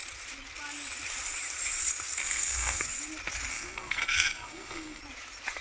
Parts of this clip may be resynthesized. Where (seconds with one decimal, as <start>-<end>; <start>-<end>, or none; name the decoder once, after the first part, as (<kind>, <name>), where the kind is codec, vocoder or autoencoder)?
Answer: 2.2-2.8 (codec, SNAC); 3.5-5.0